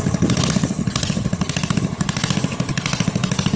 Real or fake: real